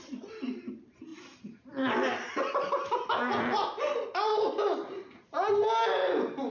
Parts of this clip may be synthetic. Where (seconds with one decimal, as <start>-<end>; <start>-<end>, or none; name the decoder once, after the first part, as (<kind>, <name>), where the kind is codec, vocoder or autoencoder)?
none